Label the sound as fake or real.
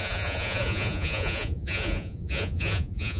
fake